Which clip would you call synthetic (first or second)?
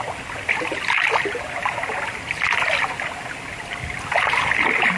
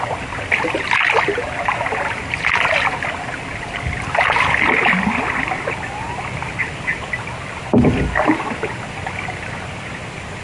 first